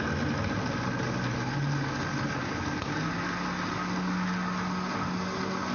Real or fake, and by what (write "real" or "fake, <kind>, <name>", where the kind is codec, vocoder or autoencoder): real